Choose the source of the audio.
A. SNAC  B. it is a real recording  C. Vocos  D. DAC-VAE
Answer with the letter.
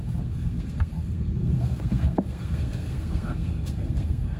A